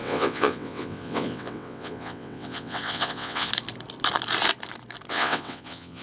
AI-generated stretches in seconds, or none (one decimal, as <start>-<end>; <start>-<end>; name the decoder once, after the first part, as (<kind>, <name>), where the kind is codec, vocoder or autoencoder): 0.0-3.5 (vocoder, WaveNeXt); 5.1-6.0